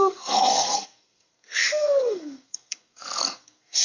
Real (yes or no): no